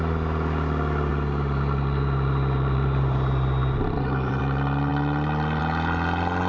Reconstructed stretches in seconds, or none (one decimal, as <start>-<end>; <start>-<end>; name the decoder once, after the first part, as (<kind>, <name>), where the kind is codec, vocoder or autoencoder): 1.1-4.4 (vocoder, BigVGAN v2)